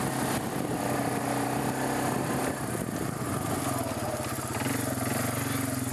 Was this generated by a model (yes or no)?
no